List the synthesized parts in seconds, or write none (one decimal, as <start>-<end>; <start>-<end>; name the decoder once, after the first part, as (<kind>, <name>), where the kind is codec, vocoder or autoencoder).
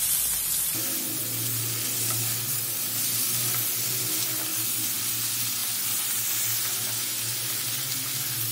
none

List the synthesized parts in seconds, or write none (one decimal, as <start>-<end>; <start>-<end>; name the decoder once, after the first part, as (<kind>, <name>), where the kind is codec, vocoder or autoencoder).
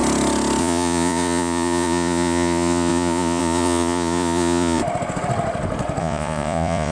0.6-4.8 (vocoder, Vocos); 6.0-6.9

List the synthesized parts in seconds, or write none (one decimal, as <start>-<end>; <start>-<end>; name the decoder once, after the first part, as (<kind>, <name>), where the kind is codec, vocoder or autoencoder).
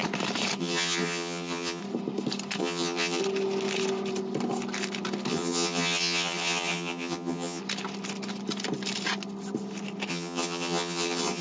0.6-1.8 (vocoder, HiFi-GAN); 2.6-3.2; 5.3-7.6; 10.1-11.4